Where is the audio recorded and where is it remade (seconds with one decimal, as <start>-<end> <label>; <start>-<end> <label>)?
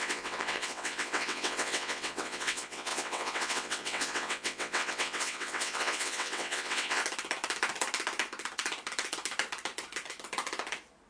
0.0-7.0 remade; 7.0-11.1 recorded